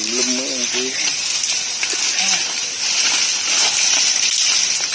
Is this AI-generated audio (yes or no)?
no